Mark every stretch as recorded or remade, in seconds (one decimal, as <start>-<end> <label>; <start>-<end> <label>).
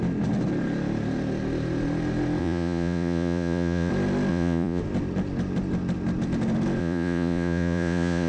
0.0-2.4 recorded; 2.4-3.9 remade; 3.9-4.3 recorded; 4.3-4.8 remade; 4.8-6.8 recorded; 6.8-8.3 remade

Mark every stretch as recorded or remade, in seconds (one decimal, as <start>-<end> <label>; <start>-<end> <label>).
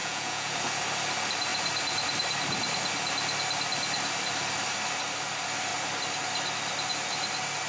0.0-0.5 remade; 0.5-7.7 recorded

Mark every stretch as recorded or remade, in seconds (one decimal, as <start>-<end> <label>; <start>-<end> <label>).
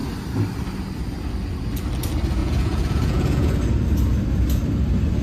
0.0-2.4 recorded; 2.4-3.6 remade; 3.6-5.2 recorded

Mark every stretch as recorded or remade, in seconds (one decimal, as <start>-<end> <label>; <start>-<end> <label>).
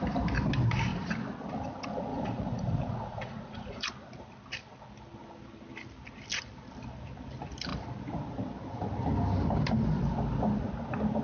0.0-2.1 recorded; 2.1-3.9 remade; 3.9-11.2 recorded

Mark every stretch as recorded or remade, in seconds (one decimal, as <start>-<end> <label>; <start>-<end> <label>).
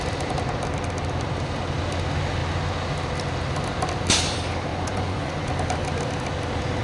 0.0-4.7 recorded; 4.7-5.5 remade; 5.5-6.8 recorded